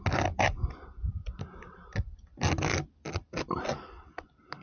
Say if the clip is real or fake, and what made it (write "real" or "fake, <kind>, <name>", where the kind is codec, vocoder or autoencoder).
real